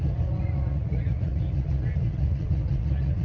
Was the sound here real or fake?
fake